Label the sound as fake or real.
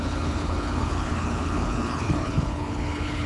fake